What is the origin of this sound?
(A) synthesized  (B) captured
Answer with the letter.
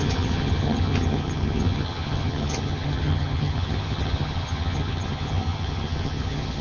A